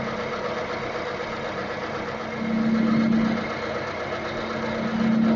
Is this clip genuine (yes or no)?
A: yes